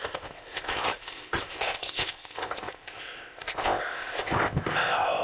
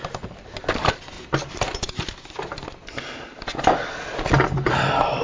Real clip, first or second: second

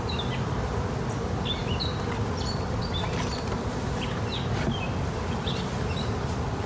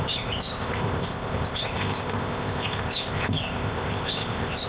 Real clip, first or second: first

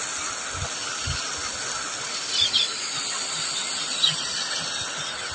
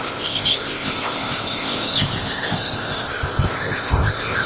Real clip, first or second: first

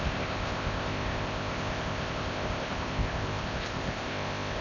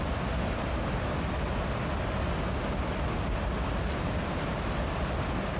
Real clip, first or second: second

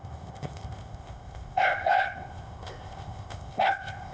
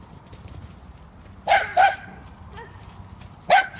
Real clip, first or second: second